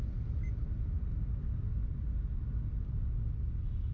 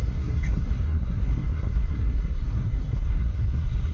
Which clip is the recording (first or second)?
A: first